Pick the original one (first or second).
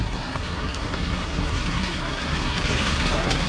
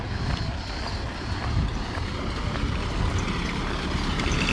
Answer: second